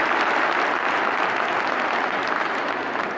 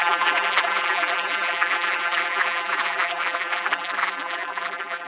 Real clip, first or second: first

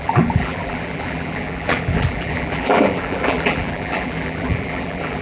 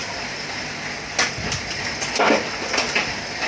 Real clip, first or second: second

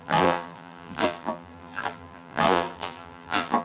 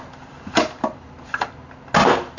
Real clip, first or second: second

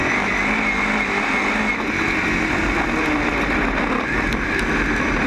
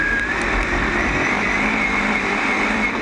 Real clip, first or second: first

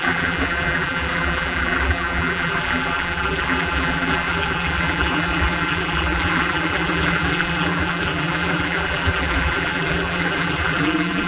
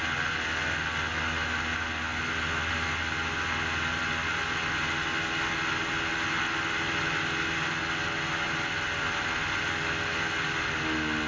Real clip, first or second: second